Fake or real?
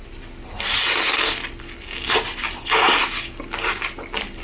real